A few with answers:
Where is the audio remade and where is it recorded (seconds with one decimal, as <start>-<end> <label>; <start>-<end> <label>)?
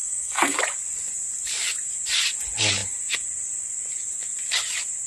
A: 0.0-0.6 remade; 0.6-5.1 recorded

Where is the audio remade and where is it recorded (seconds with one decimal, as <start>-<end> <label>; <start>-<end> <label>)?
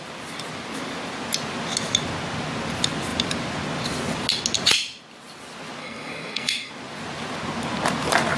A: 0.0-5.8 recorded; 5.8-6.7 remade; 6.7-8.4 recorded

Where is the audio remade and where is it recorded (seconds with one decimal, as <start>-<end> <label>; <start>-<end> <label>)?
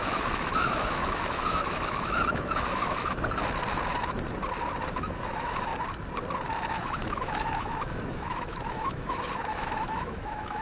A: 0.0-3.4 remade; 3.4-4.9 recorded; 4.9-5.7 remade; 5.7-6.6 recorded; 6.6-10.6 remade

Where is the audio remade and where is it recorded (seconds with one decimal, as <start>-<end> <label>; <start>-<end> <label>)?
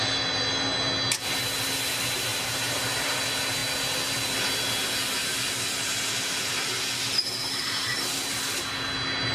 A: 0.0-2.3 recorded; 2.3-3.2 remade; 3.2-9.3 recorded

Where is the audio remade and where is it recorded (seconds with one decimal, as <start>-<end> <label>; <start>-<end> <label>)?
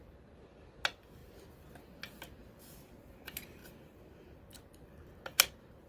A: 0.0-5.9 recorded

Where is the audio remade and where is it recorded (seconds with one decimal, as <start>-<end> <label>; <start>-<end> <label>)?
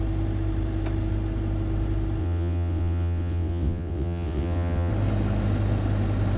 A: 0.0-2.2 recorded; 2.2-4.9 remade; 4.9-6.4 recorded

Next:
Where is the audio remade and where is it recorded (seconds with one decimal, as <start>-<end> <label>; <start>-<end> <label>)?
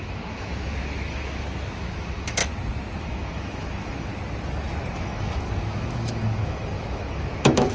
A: 0.0-2.4 remade; 2.4-3.0 recorded; 3.0-4.1 remade; 4.1-4.9 recorded; 4.9-7.7 remade